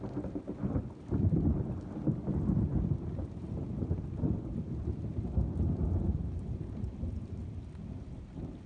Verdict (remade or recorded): recorded